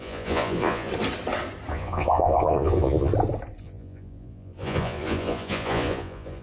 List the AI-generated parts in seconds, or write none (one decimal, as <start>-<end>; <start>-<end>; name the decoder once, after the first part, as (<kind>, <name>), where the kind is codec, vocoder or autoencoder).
0.0-0.9 (vocoder, Vocos); 1.7-3.1; 3.6-6.4